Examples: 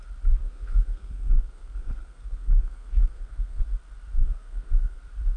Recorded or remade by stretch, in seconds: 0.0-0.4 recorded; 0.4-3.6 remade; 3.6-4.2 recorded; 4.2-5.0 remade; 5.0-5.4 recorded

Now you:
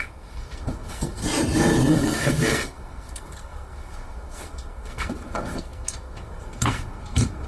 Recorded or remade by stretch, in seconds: 0.0-1.2 remade; 1.2-1.9 recorded; 1.9-7.5 remade